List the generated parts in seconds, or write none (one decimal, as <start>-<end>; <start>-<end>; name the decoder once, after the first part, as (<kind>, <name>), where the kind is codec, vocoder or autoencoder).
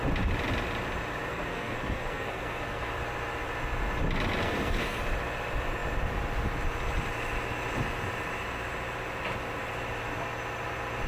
1.3-2.9 (codec, SNAC); 4.4-5.0